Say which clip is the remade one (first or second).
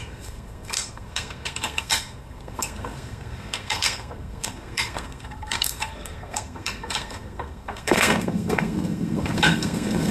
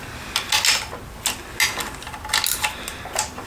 first